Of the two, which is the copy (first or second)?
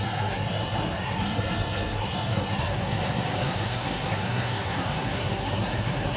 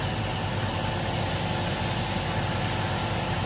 first